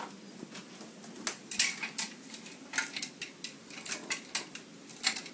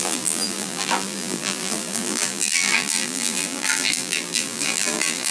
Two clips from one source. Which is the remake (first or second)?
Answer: second